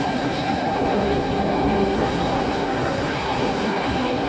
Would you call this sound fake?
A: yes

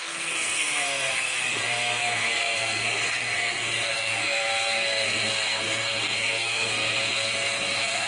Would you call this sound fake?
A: yes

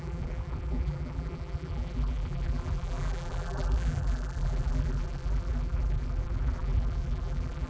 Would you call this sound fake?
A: yes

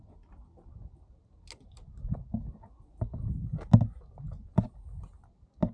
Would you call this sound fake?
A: no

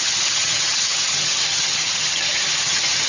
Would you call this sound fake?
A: yes